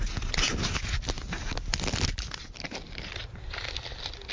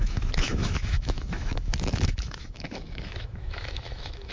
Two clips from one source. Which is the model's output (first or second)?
second